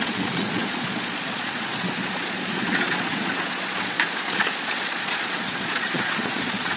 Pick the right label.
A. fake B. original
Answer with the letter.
A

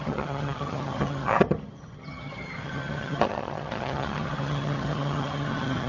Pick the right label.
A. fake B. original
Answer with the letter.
A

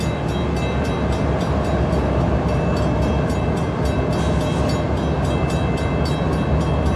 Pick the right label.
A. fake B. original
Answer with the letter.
B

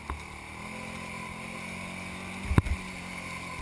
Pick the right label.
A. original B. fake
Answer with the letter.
A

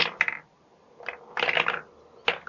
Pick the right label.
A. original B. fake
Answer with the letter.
A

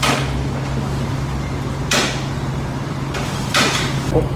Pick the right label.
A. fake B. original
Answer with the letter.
B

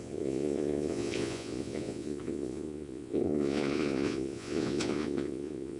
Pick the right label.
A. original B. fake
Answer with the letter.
B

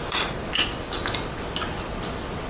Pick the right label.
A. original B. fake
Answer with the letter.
A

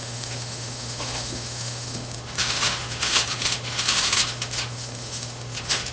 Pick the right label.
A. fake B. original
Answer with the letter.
A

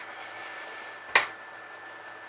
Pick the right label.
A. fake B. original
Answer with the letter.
B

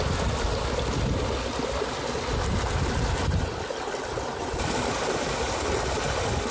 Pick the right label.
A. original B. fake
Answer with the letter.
A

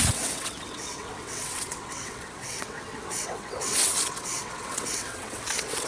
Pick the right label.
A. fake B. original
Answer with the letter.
A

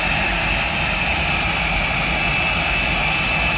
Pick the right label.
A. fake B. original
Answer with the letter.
B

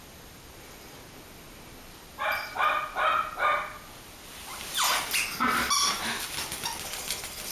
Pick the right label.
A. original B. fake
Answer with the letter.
A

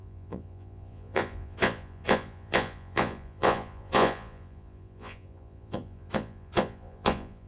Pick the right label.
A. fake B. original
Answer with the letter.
A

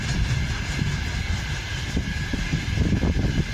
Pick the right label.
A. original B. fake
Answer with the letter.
A